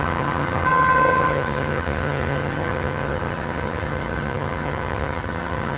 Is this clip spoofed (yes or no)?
yes